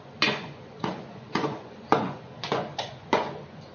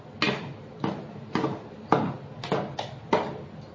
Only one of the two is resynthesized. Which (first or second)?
first